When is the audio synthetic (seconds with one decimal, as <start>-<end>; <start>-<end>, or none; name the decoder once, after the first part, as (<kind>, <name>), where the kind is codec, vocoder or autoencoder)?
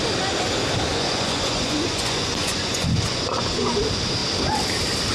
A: 0.9-3.8 (vocoder, Vocos)